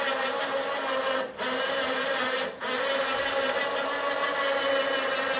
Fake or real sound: real